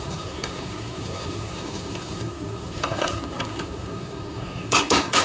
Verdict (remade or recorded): remade